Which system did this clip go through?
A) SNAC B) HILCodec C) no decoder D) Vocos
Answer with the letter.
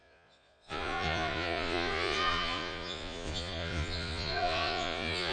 D